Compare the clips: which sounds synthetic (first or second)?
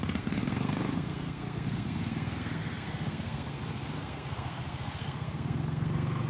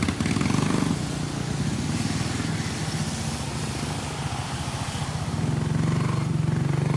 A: first